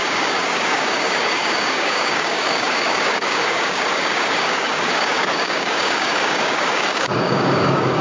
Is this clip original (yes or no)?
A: no